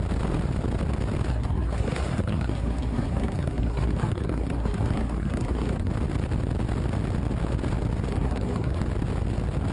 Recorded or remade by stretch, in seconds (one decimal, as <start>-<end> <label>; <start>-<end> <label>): 0.0-1.3 recorded; 1.3-5.9 remade; 5.9-8.1 recorded; 8.1-8.8 remade; 8.8-9.7 recorded